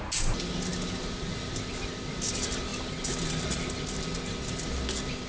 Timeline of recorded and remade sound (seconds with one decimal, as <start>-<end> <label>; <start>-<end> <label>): 0.0-5.3 recorded

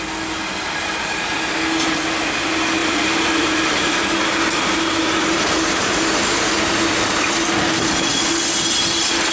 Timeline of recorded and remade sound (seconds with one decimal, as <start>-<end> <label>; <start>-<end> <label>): 0.0-2.8 recorded; 2.8-6.6 remade; 6.6-9.3 recorded